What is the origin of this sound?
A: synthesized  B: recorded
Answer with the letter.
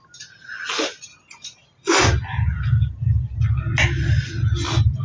B